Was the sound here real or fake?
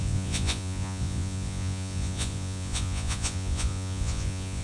fake